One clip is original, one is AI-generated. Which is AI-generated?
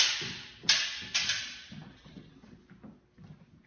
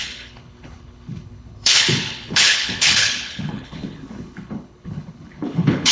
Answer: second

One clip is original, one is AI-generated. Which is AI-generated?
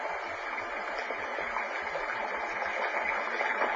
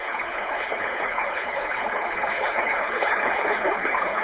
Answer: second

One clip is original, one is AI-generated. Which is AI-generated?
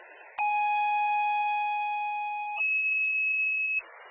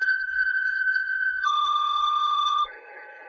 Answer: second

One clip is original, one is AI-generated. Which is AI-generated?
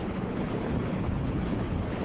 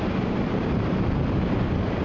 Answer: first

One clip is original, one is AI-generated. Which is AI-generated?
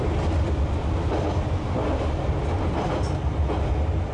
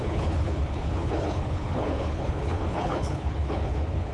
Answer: second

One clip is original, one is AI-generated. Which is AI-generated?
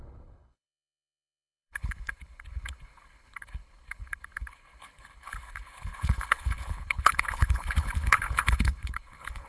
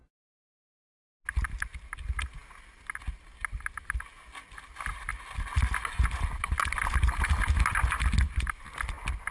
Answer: first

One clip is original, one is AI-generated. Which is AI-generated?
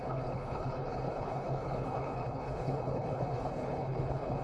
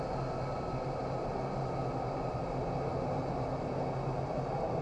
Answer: first